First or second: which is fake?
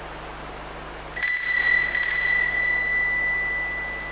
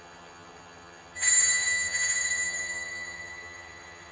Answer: second